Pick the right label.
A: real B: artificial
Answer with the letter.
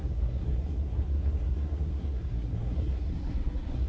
B